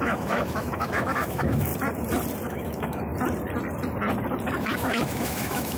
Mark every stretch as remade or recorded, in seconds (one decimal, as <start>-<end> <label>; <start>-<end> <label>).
0.0-1.7 remade; 1.7-2.5 recorded; 2.5-3.1 remade; 3.1-4.6 recorded; 4.6-5.8 remade